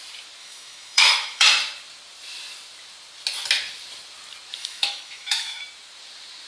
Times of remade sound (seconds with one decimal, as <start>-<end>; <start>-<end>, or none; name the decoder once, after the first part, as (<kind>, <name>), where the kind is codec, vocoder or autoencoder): 0.4-1.5 (autoencoder, DAC-VAE); 4.6-5.6